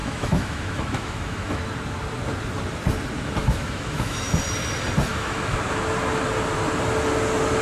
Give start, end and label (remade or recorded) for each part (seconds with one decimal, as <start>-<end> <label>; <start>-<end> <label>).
0.0-1.6 remade; 1.6-3.4 recorded; 3.4-4.3 remade; 4.3-5.1 recorded; 5.1-5.6 remade; 5.6-7.6 recorded